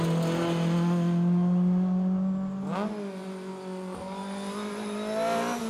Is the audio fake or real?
real